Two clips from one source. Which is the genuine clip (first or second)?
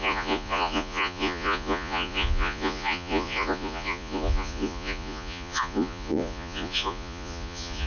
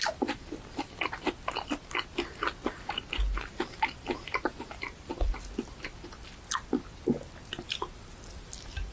second